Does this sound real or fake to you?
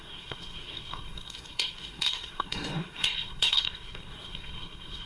fake